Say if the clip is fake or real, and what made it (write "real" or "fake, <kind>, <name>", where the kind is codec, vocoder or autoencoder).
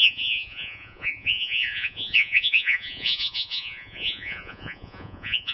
fake, vocoder, Vocos